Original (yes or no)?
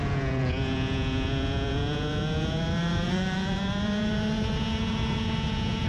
no